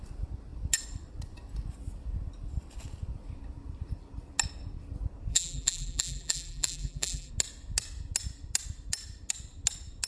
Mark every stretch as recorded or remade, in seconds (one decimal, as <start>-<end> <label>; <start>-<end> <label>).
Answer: 0.0-5.3 recorded; 5.3-7.3 remade; 7.3-10.1 recorded